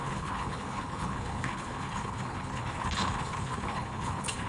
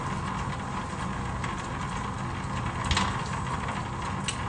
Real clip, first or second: second